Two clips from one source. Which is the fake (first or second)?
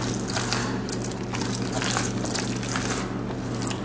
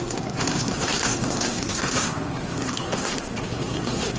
second